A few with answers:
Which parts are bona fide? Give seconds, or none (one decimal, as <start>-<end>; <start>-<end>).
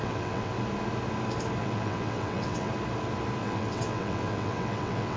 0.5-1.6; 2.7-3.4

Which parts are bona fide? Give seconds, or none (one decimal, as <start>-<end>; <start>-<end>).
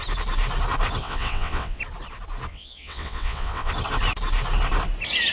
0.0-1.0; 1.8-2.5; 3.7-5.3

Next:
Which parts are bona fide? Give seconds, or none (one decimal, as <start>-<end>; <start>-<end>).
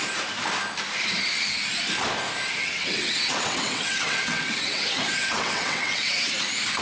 0.0-2.6; 6.3-6.8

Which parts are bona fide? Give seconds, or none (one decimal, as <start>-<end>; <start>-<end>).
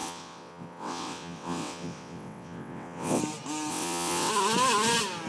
3.2-3.7; 4.3-5.3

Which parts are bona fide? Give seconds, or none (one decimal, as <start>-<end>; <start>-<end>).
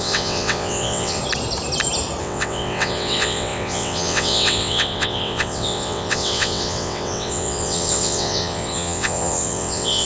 1.2-2.2